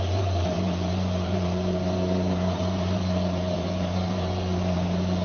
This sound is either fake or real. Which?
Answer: fake